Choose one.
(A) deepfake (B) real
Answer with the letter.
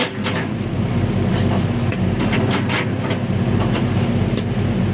B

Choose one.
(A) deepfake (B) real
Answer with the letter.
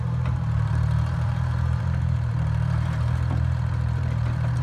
A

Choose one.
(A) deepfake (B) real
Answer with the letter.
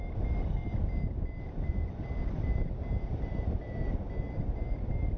B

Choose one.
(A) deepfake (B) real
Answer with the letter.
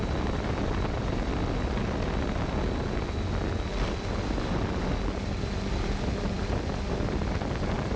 B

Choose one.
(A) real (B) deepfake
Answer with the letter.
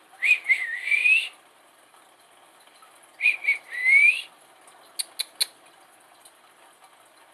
A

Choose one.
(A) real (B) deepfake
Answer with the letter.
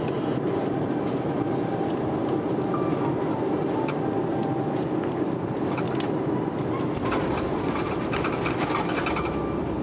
A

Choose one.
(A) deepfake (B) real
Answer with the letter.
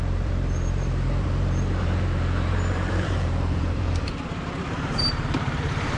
A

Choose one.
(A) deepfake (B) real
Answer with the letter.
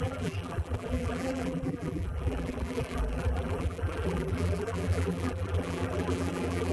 A